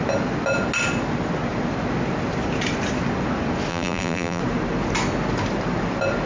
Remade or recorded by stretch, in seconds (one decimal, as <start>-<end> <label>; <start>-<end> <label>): 0.0-3.7 recorded; 3.7-4.4 remade; 4.4-6.3 recorded